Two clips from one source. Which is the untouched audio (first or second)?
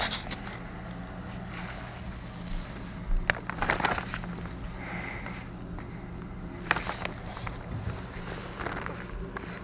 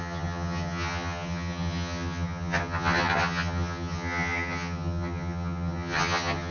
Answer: first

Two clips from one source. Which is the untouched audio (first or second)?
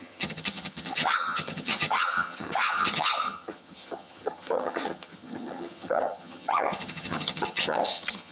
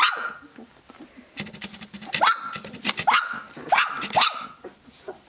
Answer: second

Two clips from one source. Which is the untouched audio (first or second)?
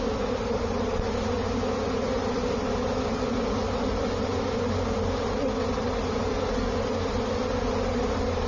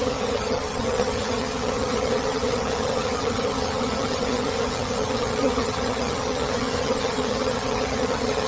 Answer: first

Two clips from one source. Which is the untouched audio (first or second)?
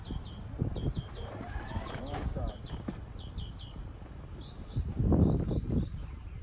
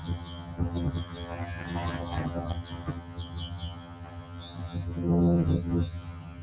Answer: first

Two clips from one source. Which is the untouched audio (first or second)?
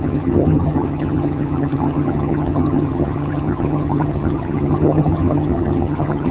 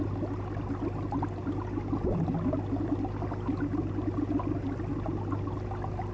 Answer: second